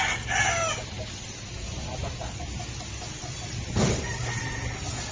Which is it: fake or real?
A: real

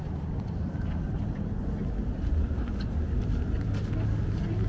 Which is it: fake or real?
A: real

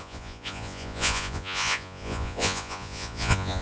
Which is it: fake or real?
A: fake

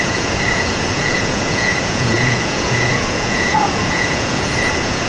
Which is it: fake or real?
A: fake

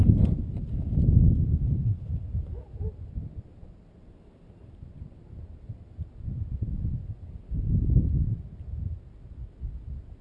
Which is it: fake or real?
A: real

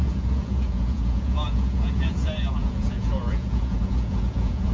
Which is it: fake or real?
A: fake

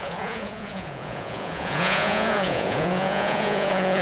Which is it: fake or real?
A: fake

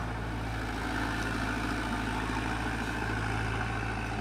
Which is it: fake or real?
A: real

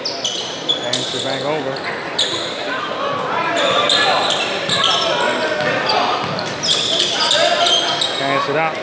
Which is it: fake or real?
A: real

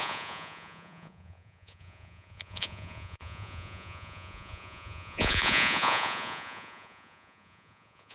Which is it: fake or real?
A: fake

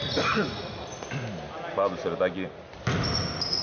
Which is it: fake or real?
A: real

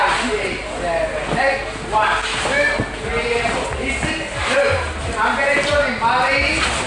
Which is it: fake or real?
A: real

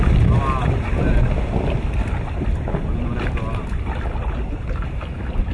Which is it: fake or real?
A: real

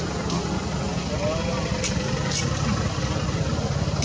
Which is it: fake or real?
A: real